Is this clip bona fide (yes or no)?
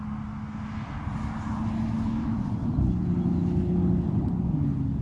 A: yes